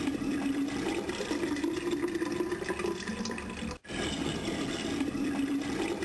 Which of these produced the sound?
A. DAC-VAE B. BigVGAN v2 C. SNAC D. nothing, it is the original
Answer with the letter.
D